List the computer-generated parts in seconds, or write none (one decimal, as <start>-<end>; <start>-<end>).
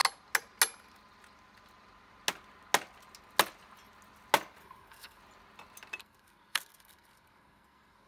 4.6-5.2; 6.0-8.1